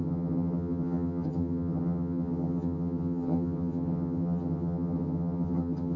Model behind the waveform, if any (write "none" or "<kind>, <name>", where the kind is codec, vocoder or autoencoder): vocoder, HiFi-GAN